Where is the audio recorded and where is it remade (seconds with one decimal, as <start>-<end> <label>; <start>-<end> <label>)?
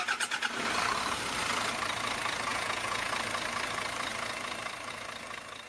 0.0-2.5 recorded; 2.5-3.1 remade; 3.1-5.7 recorded